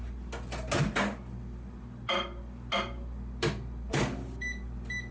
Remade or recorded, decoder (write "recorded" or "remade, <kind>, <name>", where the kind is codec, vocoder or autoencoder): recorded